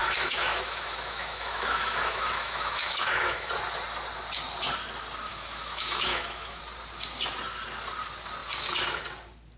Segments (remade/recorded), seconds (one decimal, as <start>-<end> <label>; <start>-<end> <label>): 0.0-3.5 remade; 3.5-5.3 recorded; 5.3-6.6 remade; 6.6-9.6 recorded